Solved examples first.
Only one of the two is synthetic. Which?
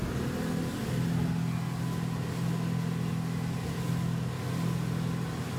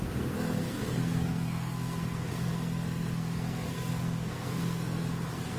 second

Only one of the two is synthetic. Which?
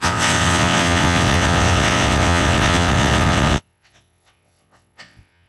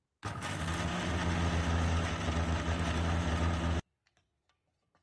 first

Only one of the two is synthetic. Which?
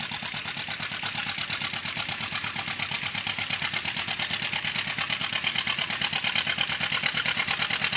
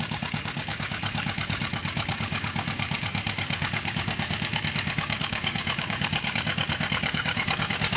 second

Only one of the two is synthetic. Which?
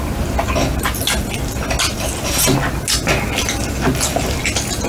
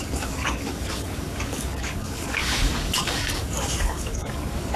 second